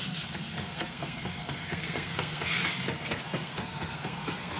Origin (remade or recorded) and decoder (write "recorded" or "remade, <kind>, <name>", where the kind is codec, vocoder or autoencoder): remade, codec, SNAC